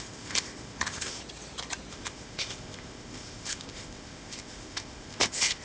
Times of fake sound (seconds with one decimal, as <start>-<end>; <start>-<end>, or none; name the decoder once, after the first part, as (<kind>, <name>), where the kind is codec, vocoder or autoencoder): 0.0-1.2 (codec, ZipCodec); 1.9-5.6